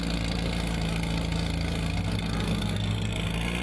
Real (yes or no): yes